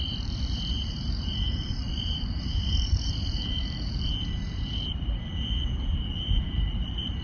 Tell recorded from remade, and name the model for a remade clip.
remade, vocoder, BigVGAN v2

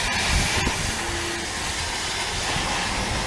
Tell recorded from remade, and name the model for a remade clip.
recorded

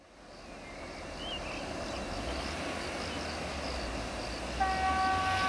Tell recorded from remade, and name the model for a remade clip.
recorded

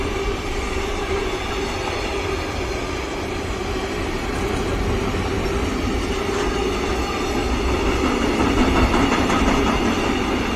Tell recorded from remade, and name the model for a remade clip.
recorded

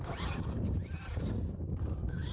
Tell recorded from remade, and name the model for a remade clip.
recorded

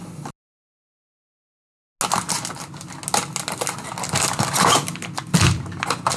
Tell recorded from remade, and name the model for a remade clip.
recorded